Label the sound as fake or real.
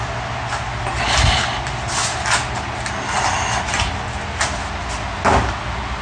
real